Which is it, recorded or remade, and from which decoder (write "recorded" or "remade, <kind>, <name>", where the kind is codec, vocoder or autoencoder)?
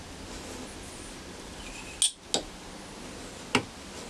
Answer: recorded